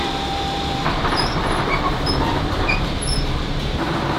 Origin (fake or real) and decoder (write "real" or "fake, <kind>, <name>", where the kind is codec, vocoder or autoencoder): fake, vocoder, BigVGAN v2